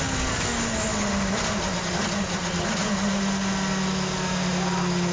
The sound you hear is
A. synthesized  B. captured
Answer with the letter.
B